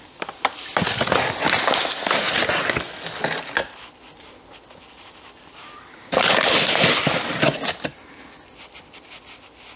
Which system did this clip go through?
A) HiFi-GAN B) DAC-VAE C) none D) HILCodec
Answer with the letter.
C